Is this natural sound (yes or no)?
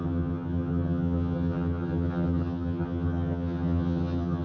no